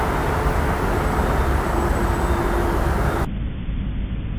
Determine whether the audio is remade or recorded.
recorded